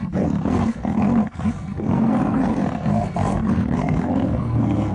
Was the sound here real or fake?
fake